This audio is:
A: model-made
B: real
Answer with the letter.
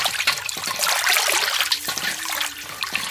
B